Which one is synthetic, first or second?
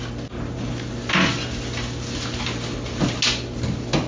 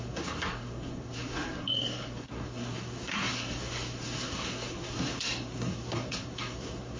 second